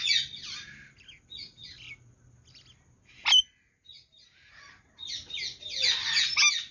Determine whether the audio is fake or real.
real